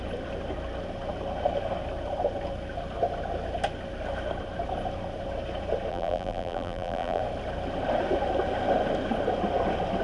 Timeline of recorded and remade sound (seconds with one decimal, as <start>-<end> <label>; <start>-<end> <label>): 0.0-5.9 recorded; 5.9-7.2 remade; 7.2-10.0 recorded